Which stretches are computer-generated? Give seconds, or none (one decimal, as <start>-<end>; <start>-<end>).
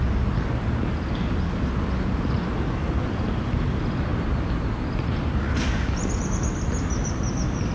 none